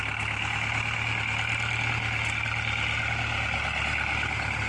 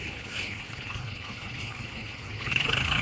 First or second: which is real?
first